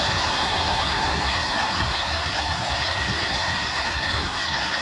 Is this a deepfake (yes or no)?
yes